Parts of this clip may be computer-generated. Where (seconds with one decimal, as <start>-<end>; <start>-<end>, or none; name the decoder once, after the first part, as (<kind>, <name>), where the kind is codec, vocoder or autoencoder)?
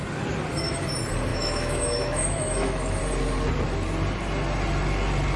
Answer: 1.3-3.0 (autoencoder, DAC-VAE)